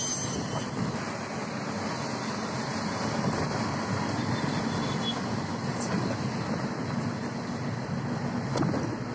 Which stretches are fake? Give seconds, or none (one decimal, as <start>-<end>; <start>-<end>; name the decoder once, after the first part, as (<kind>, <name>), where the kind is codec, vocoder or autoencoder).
none